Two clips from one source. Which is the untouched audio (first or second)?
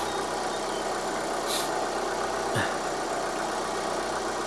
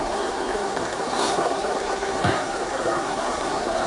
first